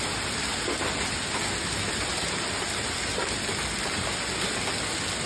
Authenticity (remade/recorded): recorded